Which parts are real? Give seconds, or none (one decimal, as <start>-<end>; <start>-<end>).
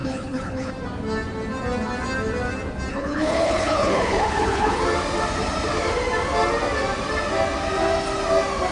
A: 0.7-2.9; 4.8-8.7